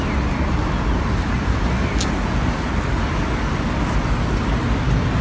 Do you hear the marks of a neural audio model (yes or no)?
no